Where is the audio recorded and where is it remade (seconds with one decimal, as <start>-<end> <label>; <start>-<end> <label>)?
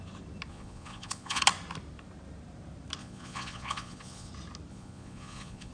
0.0-0.5 recorded; 0.5-1.4 remade; 1.4-3.0 recorded; 3.0-4.3 remade; 4.3-4.7 recorded; 4.7-5.7 remade